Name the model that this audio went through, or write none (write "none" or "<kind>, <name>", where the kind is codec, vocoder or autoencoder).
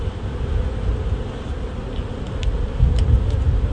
none